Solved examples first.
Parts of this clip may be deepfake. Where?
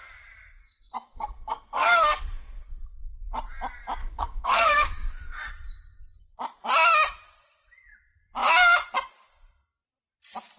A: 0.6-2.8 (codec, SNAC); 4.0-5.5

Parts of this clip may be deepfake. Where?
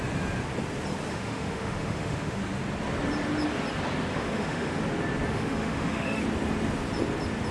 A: 1.1-2.4 (autoencoder, DAC-VAE); 4.1-4.8; 5.3-6.2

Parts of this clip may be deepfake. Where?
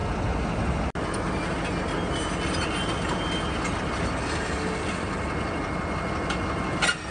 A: none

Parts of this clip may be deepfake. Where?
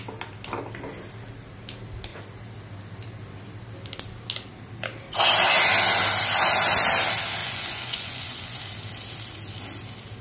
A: 7.4-8.6 (vocoder, Vocos)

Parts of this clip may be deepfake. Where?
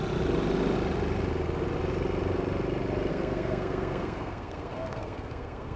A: 3.1-5.8 (codec, SNAC)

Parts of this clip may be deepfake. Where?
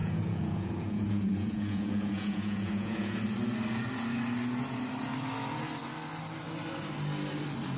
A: 0.0-3.2 (vocoder, Vocos)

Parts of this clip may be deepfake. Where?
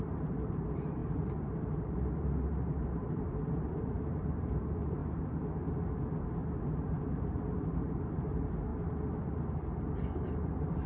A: 0.0-5.0 (vocoder, BigVGAN v2); 6.6-8.7; 10.4-10.9